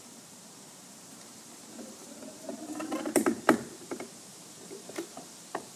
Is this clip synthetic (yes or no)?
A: yes